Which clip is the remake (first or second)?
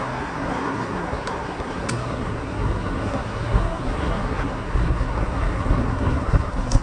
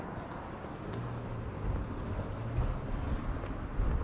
first